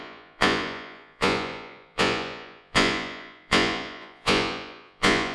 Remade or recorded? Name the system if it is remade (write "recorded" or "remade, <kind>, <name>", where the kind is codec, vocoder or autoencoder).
remade, vocoder, Vocos